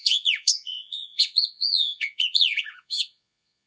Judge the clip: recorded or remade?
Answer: remade